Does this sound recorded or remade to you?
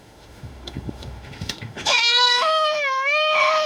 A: remade